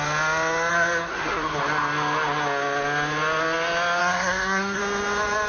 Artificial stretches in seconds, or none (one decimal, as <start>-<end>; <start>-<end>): 0.7-1.6; 4.0-4.8